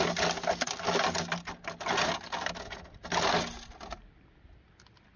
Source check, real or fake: real